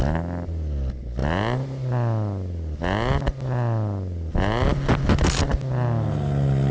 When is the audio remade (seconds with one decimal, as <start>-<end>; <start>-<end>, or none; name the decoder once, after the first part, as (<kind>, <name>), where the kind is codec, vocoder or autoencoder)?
none